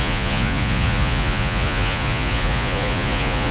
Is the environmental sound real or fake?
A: fake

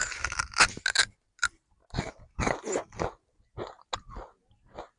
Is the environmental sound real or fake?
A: real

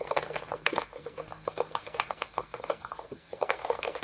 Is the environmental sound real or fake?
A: fake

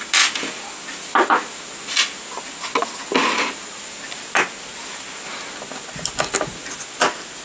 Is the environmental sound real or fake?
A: real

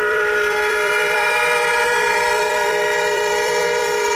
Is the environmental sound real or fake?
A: fake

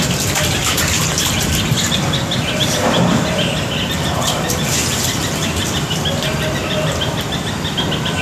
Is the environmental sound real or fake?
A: fake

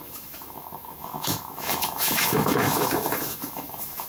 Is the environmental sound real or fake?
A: fake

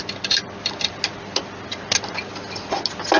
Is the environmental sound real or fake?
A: real